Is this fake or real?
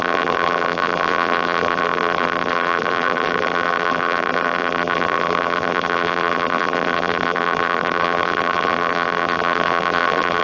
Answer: fake